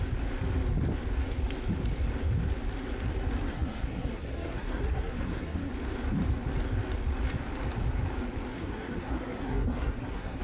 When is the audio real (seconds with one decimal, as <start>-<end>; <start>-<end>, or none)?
0.0-3.5; 5.7-8.5